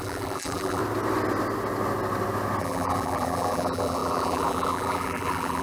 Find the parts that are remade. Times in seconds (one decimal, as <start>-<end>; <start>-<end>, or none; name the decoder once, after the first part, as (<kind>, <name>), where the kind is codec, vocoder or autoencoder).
0.0-0.8 (vocoder, BigVGAN v2); 2.6-5.6